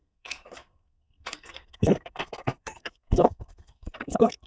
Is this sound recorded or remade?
remade